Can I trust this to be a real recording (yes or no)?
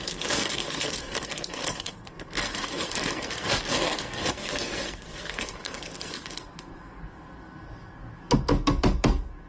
no